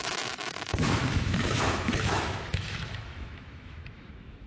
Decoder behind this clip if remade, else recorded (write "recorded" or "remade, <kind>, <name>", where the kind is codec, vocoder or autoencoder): remade, autoencoder, DAC-VAE